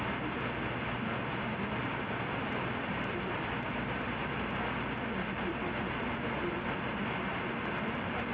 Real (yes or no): no